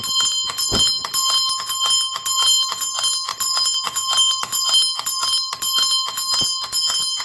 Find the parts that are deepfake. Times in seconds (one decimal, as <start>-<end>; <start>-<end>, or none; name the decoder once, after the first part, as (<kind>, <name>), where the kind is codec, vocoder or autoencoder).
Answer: none